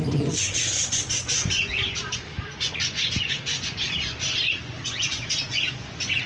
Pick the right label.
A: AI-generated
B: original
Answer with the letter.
A